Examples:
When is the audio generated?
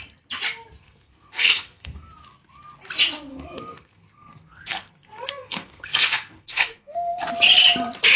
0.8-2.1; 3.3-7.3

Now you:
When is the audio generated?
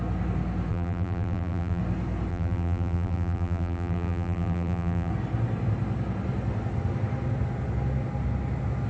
0.7-1.8; 2.3-5.1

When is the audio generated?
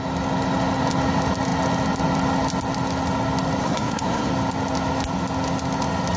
3.6-4.3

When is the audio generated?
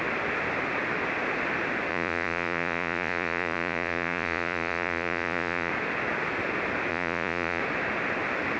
1.9-5.7; 6.9-7.6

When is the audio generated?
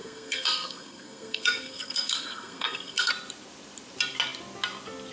0.0-3.1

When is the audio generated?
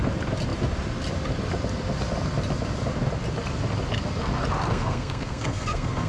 4.7-6.1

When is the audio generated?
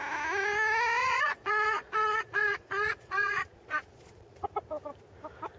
1.0-4.4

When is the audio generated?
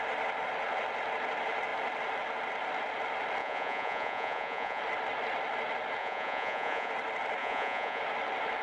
3.4-4.8; 6.0-6.9; 7.4-8.0